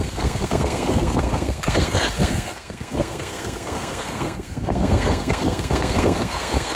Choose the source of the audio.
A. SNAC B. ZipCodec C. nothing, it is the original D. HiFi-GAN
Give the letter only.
A